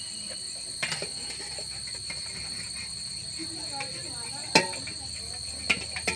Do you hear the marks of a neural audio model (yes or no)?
no